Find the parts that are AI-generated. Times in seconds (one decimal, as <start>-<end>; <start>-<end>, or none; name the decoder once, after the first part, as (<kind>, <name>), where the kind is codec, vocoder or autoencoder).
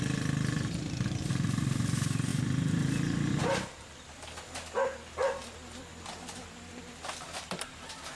0.0-3.9 (vocoder, BigVGAN v2); 5.1-5.9; 7.4-8.1